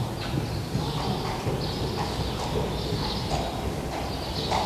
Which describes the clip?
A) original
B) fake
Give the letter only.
A